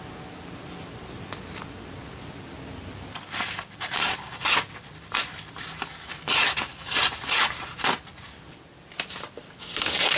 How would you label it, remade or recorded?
recorded